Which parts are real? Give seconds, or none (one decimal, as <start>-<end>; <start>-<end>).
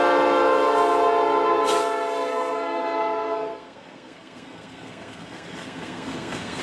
0.0-2.3